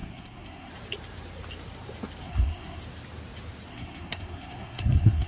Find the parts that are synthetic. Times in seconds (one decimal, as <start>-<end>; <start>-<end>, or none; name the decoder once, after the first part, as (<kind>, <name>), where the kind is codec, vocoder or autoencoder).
0.0-0.7 (codec, SNAC); 2.2-2.8; 3.7-5.3